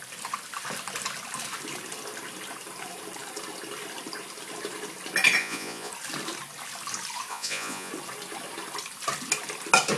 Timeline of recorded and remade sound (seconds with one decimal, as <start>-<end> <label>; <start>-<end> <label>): 0.0-5.4 recorded; 5.4-5.9 remade; 5.9-7.3 recorded; 7.3-7.9 remade; 7.9-10.0 recorded